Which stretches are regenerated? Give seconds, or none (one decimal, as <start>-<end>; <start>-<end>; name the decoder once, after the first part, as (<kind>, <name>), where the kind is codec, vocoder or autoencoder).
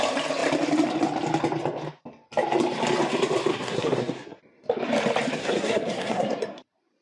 3.5-4.4 (codec, SNAC); 5.4-6.6